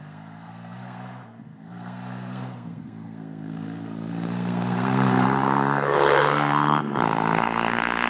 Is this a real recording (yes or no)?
no